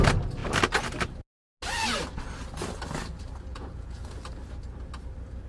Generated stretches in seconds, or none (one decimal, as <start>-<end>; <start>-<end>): 3.5-4.2